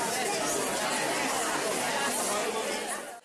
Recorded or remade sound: recorded